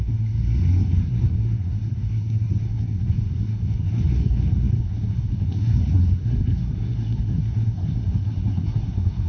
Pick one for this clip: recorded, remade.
remade